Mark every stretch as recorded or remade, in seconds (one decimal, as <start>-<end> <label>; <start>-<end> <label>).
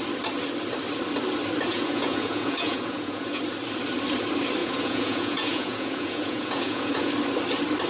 0.0-1.7 recorded; 1.7-3.4 remade; 3.4-4.6 recorded; 4.6-7.1 remade; 7.1-7.9 recorded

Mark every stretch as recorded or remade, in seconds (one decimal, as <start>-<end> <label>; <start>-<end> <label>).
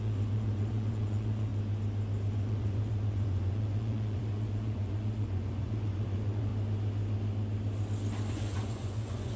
0.0-1.5 remade; 1.5-2.3 recorded; 2.3-6.5 remade; 6.5-8.3 recorded; 8.3-9.4 remade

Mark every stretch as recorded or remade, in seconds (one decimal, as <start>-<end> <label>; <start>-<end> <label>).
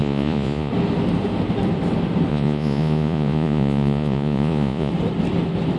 0.0-0.7 remade; 0.7-2.3 recorded; 2.3-4.9 remade; 4.9-5.8 recorded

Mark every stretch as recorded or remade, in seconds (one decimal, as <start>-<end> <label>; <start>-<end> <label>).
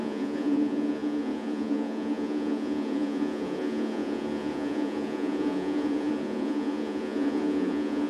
0.0-8.1 remade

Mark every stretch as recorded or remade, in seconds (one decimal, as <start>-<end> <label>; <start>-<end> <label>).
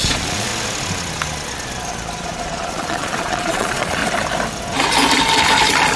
0.0-0.5 remade; 0.5-2.2 recorded; 2.2-4.0 remade; 4.0-6.0 recorded